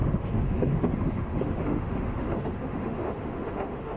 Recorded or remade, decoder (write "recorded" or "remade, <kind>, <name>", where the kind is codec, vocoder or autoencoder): remade, autoencoder, DAC-VAE